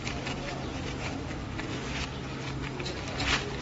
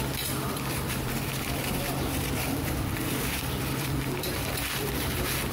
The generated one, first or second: second